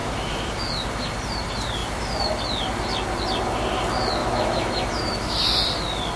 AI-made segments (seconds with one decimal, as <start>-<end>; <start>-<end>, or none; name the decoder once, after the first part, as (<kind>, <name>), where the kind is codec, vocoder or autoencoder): 0.0-0.7 (autoencoder, DAC-VAE); 4.2-5.4